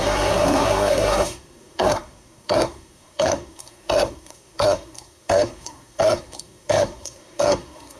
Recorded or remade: remade